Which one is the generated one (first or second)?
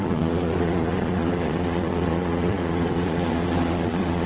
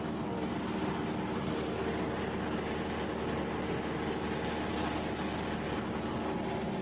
first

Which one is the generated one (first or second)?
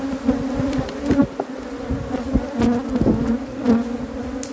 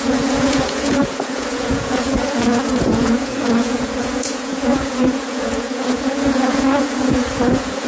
second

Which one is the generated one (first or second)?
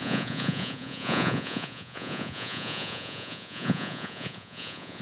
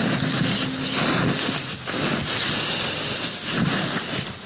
first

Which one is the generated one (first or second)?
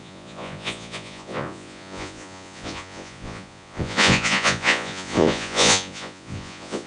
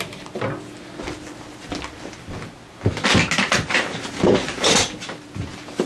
first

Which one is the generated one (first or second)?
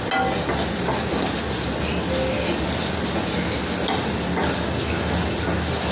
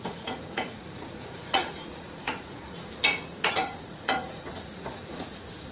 second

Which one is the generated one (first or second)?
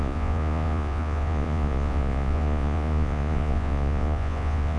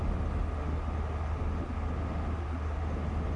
first